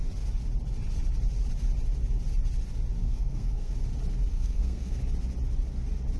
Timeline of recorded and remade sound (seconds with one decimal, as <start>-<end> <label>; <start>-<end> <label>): 0.0-3.0 recorded; 3.0-3.7 remade; 3.7-4.3 recorded; 4.3-5.0 remade; 5.0-6.2 recorded